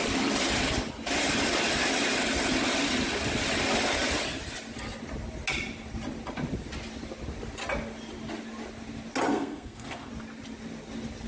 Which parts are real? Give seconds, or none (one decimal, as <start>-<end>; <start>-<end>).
0.0-9.3; 10.1-11.3